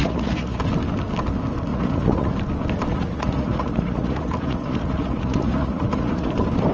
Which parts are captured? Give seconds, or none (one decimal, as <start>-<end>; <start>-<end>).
0.6-1.7; 2.3-2.9; 6.3-6.7